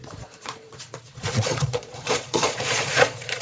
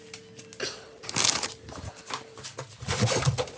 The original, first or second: second